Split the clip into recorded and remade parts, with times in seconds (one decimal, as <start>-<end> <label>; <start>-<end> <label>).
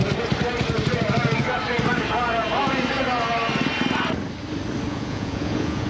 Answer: 0.0-4.9 recorded; 4.9-5.9 remade